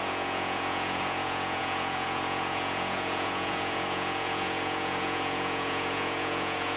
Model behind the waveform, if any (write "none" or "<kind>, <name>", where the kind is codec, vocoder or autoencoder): vocoder, Vocos